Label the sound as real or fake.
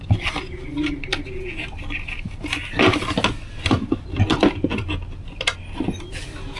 real